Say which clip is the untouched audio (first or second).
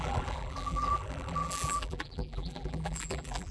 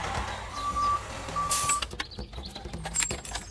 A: second